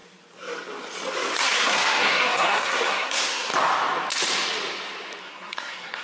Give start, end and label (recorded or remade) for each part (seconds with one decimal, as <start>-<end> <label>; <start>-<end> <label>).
0.0-1.4 recorded; 1.4-3.5 remade; 3.5-5.2 recorded; 5.2-6.0 remade